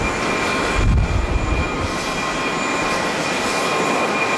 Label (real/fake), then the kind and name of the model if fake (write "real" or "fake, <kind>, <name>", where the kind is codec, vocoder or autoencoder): real